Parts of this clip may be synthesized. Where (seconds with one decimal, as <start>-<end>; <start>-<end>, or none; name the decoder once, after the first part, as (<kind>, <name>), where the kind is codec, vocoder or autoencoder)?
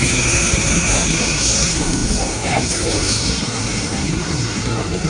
0.0-5.1 (codec, SNAC)